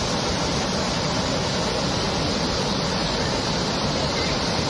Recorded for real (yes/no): yes